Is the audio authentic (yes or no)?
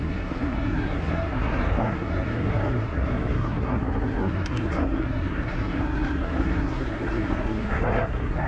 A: no